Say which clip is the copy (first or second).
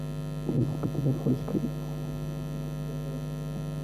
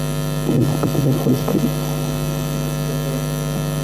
second